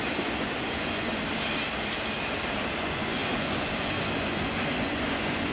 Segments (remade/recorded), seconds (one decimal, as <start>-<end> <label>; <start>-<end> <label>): 0.0-1.2 remade; 1.2-2.8 recorded; 2.8-5.5 remade